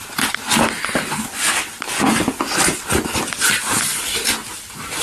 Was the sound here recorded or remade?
recorded